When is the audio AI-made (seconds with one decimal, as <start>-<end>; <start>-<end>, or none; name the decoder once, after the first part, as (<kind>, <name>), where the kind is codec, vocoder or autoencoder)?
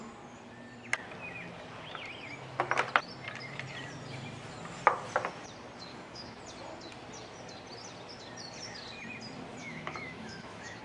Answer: 5.9-6.4 (autoencoder, DAC-VAE); 9.6-10.8